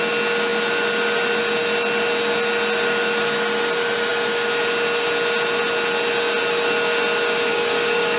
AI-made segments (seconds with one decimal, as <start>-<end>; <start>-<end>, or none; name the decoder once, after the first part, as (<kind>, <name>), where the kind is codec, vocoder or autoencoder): 7.5-8.2 (codec, DAC)